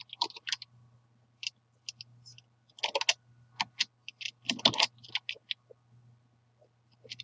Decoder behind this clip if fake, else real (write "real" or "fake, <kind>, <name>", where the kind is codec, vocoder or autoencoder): real